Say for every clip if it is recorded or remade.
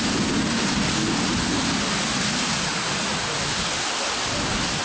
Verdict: recorded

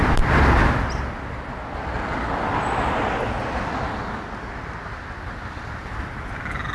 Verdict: recorded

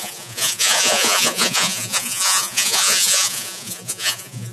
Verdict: remade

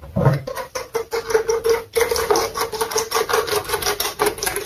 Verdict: recorded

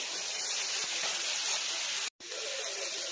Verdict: recorded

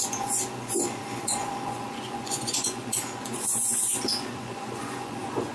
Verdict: remade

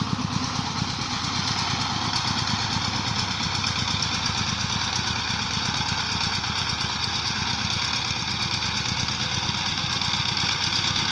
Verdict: recorded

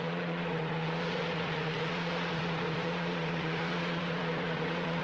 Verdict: remade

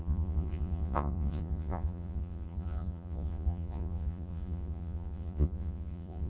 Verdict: remade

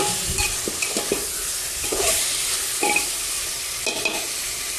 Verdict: recorded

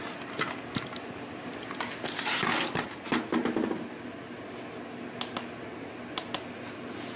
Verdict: recorded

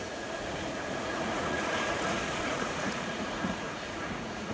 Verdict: remade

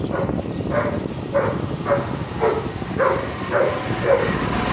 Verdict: recorded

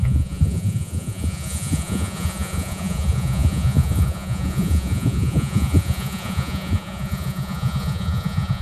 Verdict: remade